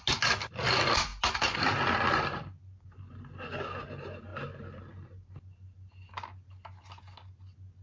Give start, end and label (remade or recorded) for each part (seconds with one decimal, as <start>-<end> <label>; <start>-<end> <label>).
0.0-7.8 recorded